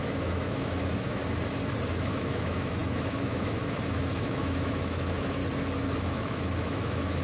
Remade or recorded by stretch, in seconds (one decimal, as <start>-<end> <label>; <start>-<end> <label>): 0.0-1.2 remade; 1.2-1.9 recorded; 1.9-5.4 remade; 5.4-6.0 recorded; 6.0-7.2 remade